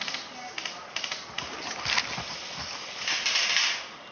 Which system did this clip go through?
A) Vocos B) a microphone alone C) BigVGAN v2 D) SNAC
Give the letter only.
B